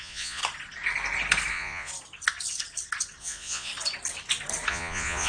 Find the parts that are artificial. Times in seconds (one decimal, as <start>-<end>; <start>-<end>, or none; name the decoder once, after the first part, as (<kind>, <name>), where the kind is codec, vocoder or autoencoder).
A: 0.0-0.4 (vocoder, Vocos); 1.5-1.9; 3.2-3.7; 4.7-5.3